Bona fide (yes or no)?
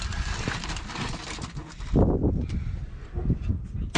yes